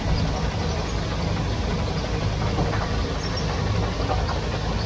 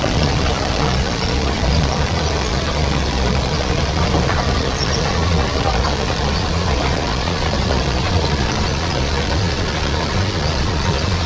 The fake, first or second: second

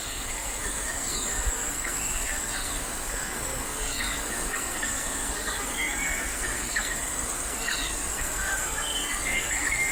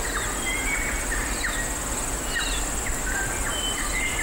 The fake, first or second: first